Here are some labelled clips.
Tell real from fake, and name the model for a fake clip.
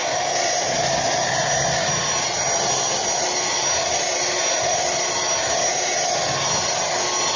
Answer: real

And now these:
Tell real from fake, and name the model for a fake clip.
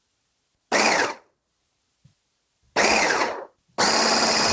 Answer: real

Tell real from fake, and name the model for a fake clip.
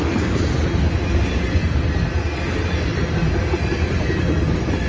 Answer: real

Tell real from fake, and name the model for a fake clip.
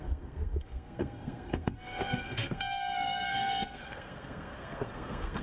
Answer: fake, codec, SNAC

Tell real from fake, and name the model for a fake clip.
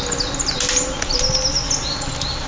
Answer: real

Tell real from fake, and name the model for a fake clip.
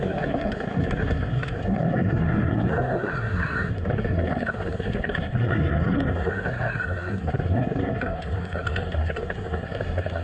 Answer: fake, codec, SNAC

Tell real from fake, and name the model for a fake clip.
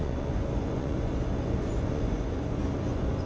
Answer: fake, vocoder, Vocos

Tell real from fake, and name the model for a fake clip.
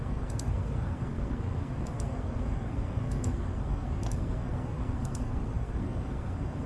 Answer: fake, codec, SNAC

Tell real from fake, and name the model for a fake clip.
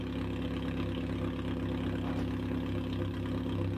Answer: real